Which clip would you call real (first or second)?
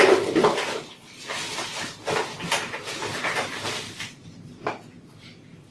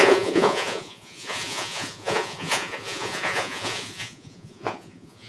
first